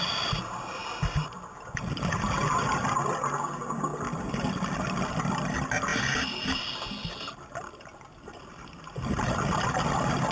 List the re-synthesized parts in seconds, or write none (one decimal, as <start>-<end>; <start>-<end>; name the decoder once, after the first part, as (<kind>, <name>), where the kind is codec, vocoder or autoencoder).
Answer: none